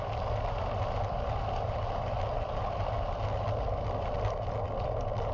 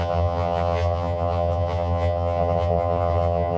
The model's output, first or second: second